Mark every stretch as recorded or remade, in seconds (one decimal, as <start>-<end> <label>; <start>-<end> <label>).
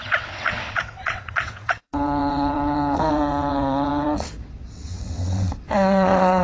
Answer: 0.0-6.4 remade